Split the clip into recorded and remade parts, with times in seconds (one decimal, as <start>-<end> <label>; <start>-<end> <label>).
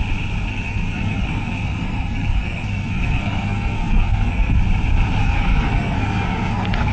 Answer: 0.0-0.5 recorded; 0.5-4.6 remade; 4.6-5.2 recorded; 5.2-6.9 remade